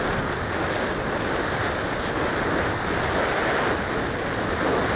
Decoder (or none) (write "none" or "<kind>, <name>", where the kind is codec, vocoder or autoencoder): none